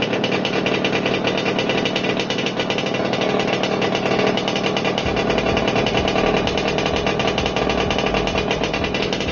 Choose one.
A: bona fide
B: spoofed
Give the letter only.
A